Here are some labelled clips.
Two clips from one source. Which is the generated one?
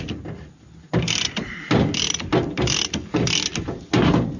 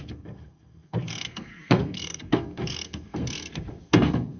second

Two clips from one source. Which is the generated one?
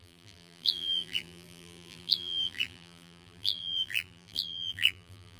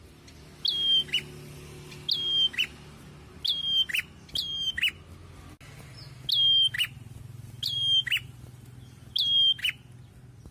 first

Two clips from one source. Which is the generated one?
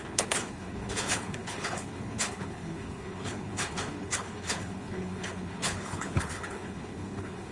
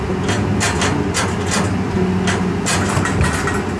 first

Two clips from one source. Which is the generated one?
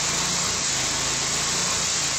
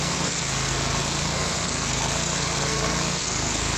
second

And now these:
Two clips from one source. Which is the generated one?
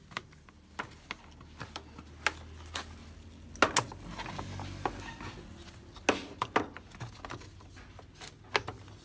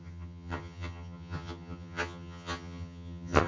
second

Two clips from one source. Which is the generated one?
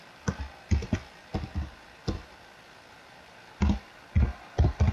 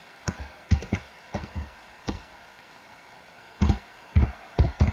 second